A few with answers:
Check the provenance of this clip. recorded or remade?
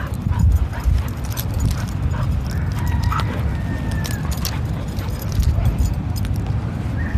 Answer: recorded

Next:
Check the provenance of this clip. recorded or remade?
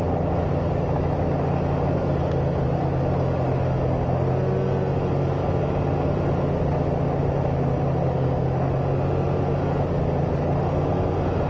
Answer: recorded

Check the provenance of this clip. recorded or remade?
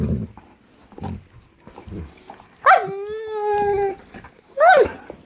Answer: recorded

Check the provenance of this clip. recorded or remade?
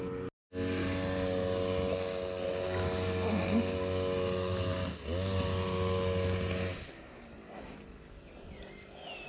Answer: recorded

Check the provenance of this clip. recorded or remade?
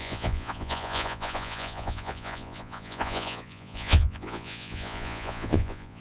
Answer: remade